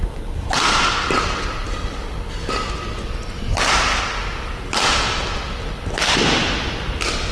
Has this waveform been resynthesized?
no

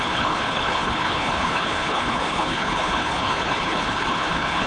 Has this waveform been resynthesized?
yes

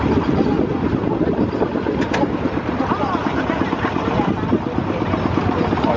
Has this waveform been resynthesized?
no